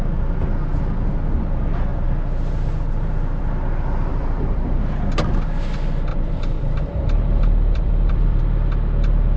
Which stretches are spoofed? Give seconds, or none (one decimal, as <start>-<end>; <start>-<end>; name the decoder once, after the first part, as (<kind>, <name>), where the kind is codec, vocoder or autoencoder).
4.1-4.8 (vocoder, BigVGAN v2); 6.1-8.4